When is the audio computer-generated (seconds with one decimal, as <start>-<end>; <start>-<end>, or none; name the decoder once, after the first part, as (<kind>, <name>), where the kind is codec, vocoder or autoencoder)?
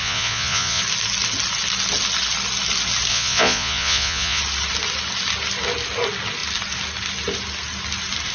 0.0-0.8 (vocoder, Vocos); 3.1-4.4